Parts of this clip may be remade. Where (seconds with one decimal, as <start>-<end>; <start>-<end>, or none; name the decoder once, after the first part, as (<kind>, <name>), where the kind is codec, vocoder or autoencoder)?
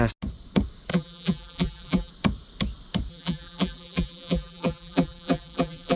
0.9-2.1 (vocoder, BigVGAN v2); 3.1-6.0